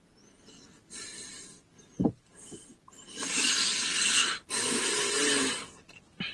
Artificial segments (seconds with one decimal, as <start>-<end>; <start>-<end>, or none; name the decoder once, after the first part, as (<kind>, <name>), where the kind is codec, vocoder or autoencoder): none

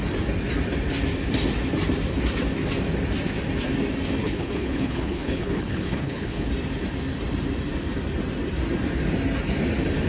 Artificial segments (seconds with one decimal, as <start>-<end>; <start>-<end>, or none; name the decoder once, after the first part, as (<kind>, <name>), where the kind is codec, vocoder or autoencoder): 4.2-6.5 (codec, HILCodec)

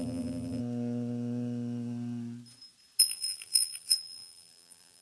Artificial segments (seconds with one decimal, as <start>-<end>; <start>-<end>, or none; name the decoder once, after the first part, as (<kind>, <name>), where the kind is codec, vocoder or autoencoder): 0.0-0.6 (vocoder, BigVGAN v2); 3.0-5.0